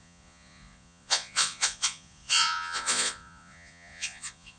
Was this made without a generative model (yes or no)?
no